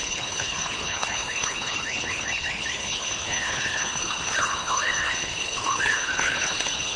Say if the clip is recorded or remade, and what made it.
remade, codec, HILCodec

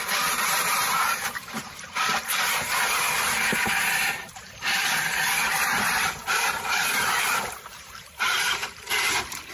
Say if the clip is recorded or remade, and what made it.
remade, vocoder, BigVGAN v2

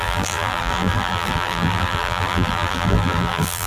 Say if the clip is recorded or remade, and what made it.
remade, vocoder, BigVGAN v2